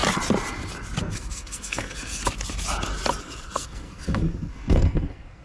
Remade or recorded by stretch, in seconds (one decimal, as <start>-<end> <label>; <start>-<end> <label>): 0.0-1.0 recorded; 1.0-2.2 remade; 2.2-3.2 recorded; 3.2-5.4 remade